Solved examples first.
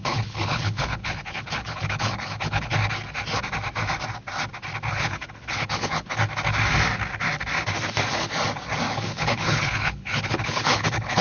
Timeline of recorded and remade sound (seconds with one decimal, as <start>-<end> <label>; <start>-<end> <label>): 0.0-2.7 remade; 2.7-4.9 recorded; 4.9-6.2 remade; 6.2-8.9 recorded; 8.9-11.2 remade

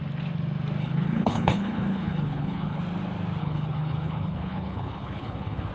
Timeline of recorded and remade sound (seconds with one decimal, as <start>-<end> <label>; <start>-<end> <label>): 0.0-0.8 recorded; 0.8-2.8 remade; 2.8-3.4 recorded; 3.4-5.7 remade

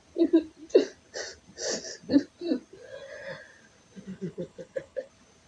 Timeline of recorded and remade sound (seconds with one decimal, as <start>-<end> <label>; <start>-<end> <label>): 0.0-4.1 recorded; 4.1-5.1 remade; 5.1-5.5 recorded

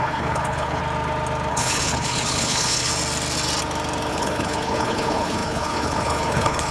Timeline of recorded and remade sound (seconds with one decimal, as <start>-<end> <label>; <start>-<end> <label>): 0.0-0.8 remade; 0.8-1.5 recorded; 1.5-2.9 remade; 2.9-4.1 recorded; 4.1-6.7 remade

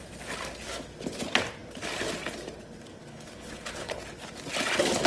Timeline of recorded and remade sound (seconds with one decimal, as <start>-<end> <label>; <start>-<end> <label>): 0.0-3.1 recorded; 3.1-4.0 remade; 4.0-5.1 recorded

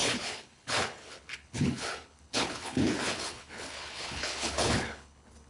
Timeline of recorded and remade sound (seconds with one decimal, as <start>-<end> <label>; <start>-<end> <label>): 0.0-5.5 remade